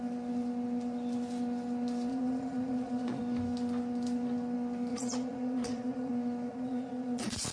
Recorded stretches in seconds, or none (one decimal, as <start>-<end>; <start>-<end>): 0.0-2.1; 3.2-4.9; 6.1-6.5